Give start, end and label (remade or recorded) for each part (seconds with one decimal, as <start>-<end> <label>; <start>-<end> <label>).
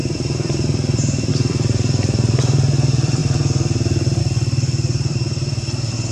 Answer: 0.0-6.1 remade